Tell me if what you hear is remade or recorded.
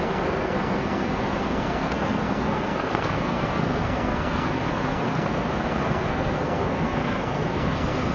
remade